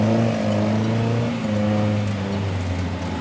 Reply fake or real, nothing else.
real